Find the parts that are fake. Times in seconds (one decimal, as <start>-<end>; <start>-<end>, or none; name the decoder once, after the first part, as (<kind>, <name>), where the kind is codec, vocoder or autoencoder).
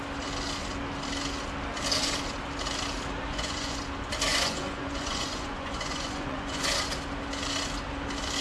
3.2-3.8 (vocoder, Vocos); 4.3-6.7